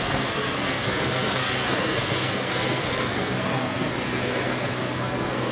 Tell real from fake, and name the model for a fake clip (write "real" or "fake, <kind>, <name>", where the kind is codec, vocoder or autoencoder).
fake, codec, SNAC